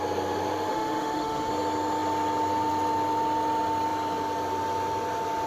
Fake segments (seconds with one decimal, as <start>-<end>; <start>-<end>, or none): 0.7-1.5